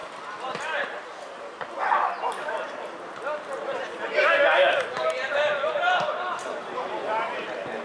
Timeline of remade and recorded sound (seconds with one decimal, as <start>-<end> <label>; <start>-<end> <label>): 0.0-7.8 recorded